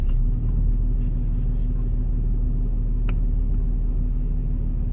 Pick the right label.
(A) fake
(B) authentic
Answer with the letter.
B